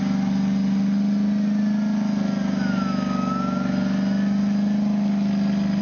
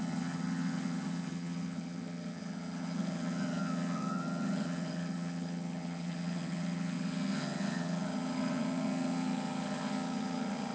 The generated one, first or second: second